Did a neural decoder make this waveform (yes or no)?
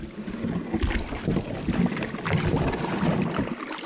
no